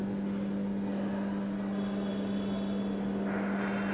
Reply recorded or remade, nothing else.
recorded